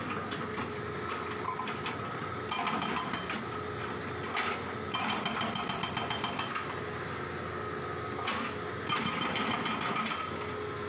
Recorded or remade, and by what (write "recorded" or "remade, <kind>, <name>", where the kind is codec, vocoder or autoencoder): recorded